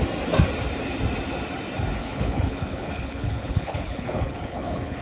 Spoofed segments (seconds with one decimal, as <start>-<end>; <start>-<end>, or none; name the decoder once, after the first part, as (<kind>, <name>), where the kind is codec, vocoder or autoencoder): 2.0-5.0 (codec, HILCodec)